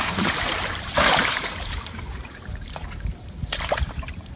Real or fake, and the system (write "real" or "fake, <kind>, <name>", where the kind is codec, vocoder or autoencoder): fake, vocoder, BigVGAN v2